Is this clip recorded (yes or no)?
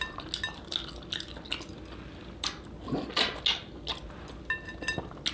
yes